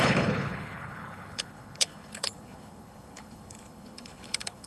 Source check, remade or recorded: remade